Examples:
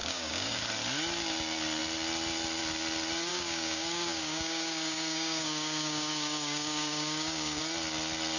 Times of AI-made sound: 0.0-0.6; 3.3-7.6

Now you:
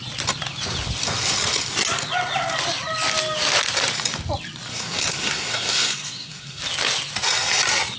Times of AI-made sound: 4.7-6.6